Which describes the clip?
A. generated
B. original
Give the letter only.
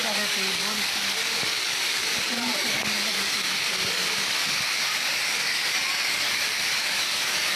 A